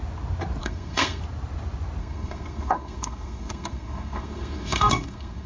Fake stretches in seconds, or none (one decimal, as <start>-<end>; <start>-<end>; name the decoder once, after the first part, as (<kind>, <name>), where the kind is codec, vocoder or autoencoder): 0.6-1.2 (codec, SNAC); 2.0-5.5